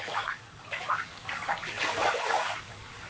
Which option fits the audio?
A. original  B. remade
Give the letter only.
B